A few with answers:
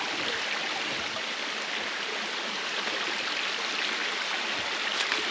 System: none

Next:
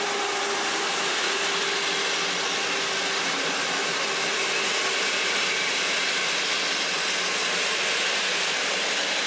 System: none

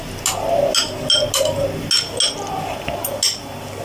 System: none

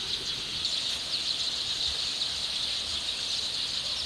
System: none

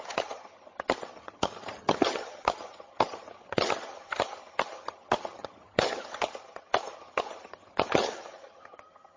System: vocoder, HiFi-GAN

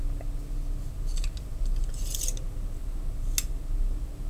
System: none